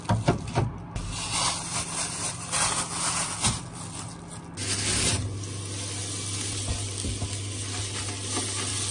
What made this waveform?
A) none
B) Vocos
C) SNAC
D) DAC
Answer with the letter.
A